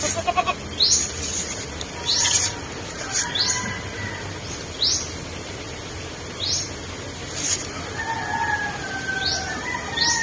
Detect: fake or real real